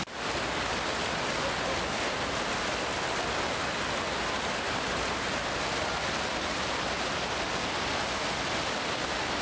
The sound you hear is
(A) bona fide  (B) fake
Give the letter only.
A